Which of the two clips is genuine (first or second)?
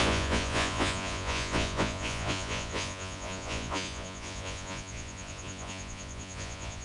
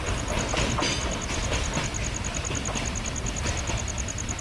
second